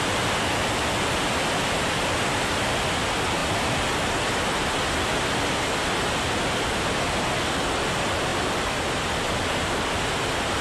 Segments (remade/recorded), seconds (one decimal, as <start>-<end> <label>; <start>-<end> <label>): 0.0-8.3 recorded; 8.3-9.7 remade; 9.7-10.6 recorded